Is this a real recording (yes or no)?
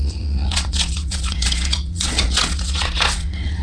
no